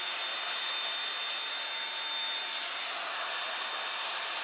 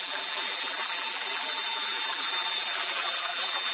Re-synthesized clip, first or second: second